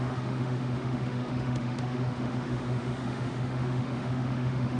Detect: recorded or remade remade